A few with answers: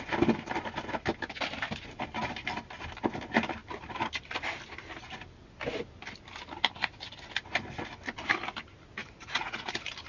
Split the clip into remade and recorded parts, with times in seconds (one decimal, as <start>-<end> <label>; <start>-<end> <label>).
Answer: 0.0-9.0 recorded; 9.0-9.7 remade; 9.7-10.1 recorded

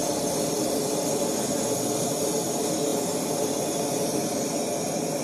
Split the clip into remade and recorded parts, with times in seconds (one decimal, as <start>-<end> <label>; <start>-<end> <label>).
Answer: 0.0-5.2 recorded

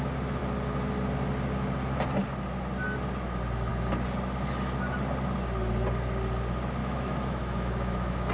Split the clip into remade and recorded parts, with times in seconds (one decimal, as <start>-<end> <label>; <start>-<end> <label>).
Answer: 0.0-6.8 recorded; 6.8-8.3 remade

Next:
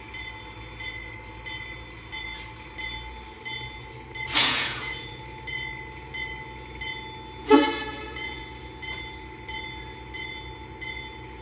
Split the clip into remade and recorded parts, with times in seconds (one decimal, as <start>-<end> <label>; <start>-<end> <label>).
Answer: 0.0-4.4 recorded; 4.4-5.2 remade; 5.2-7.4 recorded; 7.4-8.4 remade; 8.4-11.4 recorded